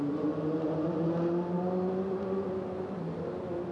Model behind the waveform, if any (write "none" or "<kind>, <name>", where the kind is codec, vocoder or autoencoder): none